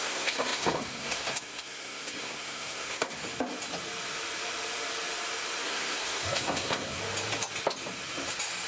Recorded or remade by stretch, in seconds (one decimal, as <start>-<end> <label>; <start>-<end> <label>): 0.0-3.2 remade; 3.2-5.6 recorded; 5.6-7.0 remade; 7.0-8.7 recorded